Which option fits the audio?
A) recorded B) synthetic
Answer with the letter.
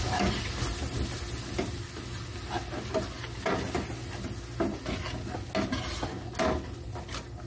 A